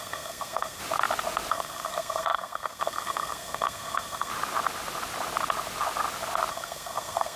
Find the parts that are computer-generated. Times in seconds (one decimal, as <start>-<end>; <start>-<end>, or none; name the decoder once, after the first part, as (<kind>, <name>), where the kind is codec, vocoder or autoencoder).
0.0-0.8 (codec, SNAC); 1.5-4.3; 6.5-7.4